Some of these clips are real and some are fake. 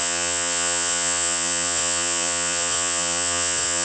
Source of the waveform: fake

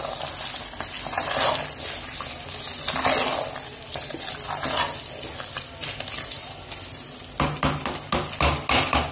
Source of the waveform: real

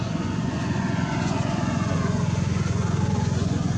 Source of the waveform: fake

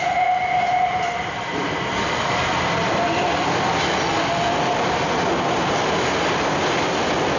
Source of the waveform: real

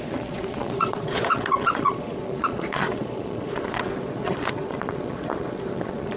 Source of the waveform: fake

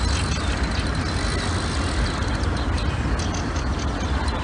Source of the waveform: real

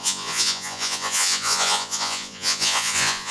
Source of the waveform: fake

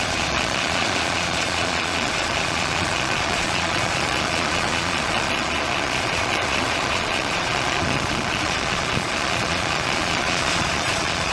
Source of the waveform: fake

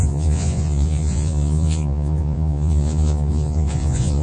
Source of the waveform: fake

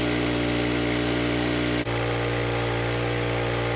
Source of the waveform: real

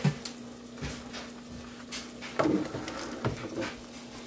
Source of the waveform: real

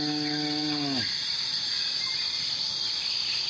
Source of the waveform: real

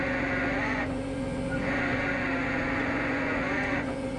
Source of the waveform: fake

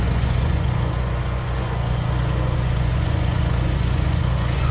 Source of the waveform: fake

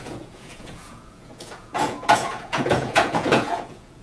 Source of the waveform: fake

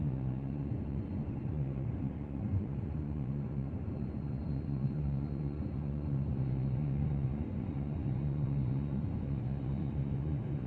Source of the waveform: fake